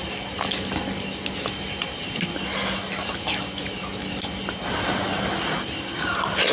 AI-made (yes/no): no